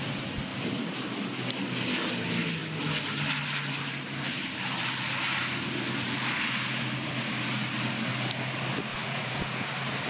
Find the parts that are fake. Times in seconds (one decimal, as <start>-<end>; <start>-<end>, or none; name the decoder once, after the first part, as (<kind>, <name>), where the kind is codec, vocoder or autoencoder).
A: 8.9-9.7 (vocoder, Vocos)